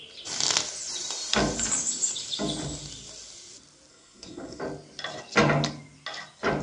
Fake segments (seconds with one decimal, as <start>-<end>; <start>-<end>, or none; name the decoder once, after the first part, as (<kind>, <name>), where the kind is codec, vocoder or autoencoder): 3.9-4.6 (codec, SNAC)